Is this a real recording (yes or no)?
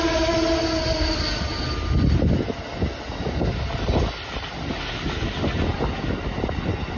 yes